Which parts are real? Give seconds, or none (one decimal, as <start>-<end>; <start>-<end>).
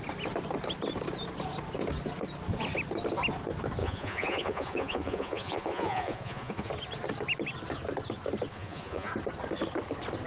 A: 0.0-3.8; 6.7-8.5; 9.1-10.3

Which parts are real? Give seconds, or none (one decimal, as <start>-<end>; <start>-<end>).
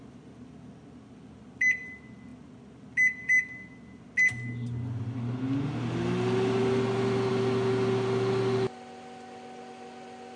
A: 0.0-10.4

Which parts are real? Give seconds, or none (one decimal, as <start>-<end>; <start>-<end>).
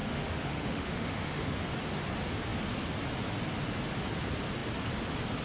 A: 1.6-5.4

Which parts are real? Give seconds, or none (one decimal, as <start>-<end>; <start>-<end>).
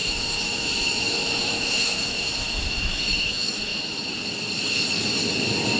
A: 3.7-5.8